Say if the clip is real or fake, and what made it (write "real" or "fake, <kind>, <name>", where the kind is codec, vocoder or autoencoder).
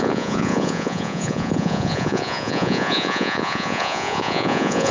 fake, vocoder, Vocos